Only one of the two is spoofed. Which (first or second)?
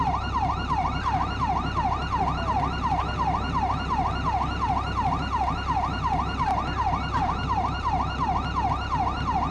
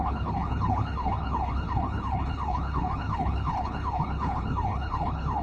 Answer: second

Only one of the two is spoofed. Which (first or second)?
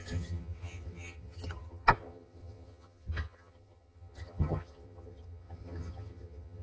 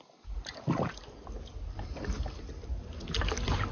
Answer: first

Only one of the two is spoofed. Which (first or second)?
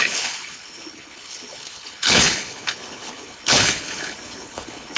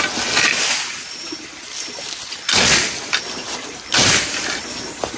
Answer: first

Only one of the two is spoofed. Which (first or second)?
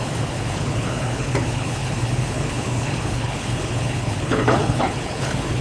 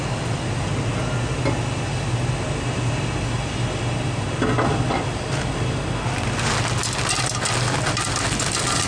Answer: first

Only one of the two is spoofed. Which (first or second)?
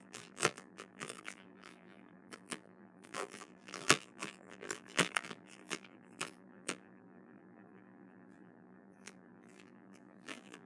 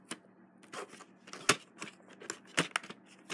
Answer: first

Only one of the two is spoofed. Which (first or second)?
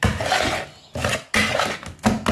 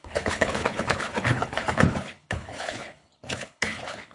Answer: second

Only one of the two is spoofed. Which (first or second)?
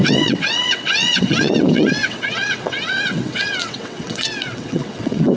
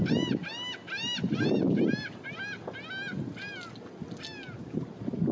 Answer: first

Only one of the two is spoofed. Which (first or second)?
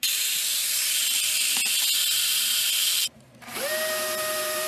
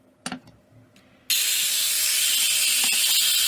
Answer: first